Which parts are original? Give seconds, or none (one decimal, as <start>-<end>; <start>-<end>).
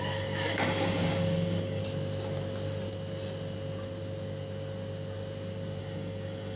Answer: 1.8-5.8